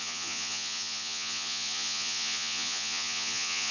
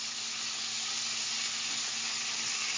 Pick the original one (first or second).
second